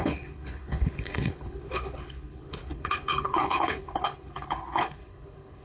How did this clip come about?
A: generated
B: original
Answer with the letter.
A